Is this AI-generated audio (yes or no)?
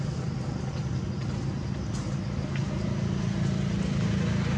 no